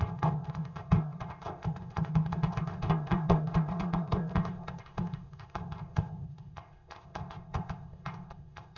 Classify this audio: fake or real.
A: fake